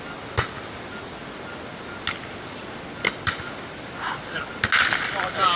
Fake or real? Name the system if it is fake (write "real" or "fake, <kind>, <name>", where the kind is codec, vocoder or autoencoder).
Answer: real